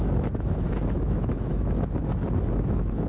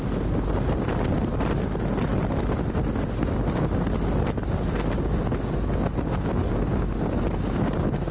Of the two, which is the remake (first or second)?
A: first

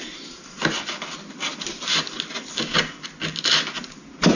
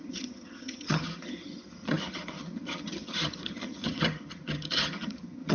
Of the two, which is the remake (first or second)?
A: second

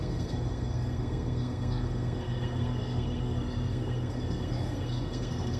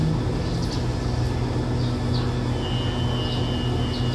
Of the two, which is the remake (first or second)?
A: first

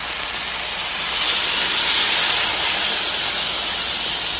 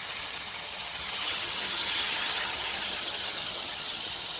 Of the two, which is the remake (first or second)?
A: second